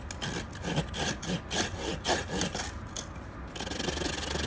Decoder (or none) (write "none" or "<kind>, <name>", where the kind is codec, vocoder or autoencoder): none